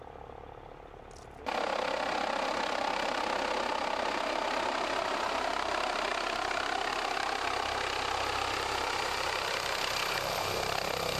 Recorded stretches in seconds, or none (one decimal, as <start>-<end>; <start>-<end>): 0.0-6.1; 6.9-11.2